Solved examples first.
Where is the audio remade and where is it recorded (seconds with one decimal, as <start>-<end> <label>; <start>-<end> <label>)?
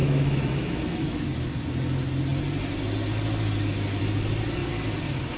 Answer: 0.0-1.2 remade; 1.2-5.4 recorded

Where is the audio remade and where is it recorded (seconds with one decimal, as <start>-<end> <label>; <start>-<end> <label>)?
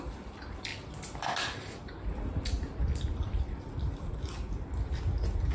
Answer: 0.0-5.5 recorded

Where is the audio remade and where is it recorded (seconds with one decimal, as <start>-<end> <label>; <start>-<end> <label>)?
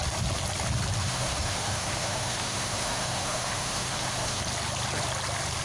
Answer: 0.0-1.0 recorded; 1.0-4.4 remade; 4.4-5.6 recorded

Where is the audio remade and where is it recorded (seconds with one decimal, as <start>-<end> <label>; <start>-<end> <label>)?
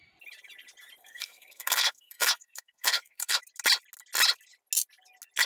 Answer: 0.0-1.0 recorded; 1.0-3.4 remade; 3.4-5.5 recorded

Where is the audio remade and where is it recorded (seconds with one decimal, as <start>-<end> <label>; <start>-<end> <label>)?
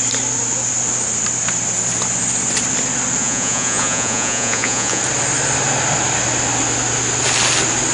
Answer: 0.0-3.2 recorded; 3.2-5.0 remade; 5.0-7.9 recorded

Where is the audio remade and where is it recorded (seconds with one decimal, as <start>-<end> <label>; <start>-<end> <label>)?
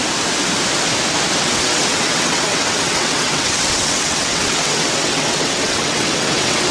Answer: 0.0-1.4 recorded; 1.4-6.7 remade